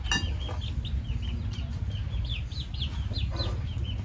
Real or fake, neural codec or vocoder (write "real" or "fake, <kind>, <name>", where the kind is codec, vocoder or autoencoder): real